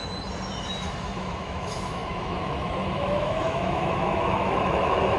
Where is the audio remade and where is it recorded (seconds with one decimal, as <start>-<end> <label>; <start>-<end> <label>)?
0.0-0.9 recorded; 0.9-5.2 remade